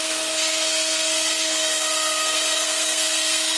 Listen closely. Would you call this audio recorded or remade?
remade